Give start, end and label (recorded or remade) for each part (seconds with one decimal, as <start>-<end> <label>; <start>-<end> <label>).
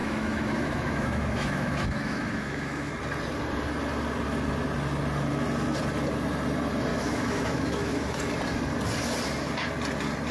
0.0-2.9 remade; 2.9-6.9 recorded; 6.9-8.2 remade; 8.2-10.3 recorded